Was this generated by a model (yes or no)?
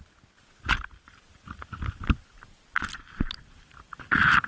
no